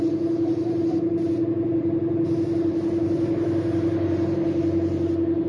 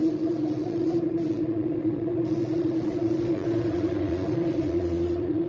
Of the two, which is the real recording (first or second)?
first